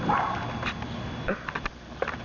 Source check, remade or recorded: recorded